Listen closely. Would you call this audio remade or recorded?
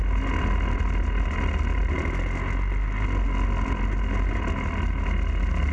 recorded